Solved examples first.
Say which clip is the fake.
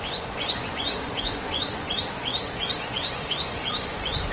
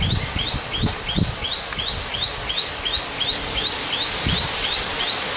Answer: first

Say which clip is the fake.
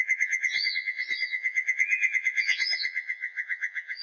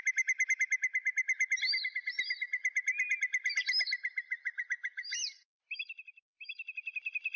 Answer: first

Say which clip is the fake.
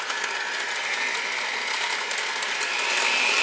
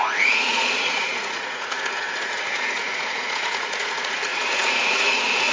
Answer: second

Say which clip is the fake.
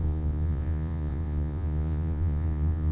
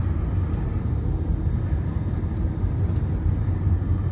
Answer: first